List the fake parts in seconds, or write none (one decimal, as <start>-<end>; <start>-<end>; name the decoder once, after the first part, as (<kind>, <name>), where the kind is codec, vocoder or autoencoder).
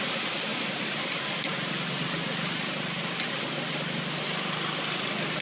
none